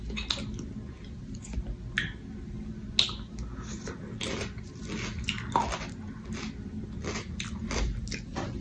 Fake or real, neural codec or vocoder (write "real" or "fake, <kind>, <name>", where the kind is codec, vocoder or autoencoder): real